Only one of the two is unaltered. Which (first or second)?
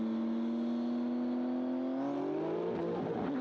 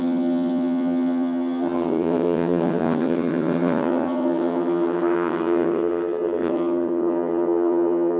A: first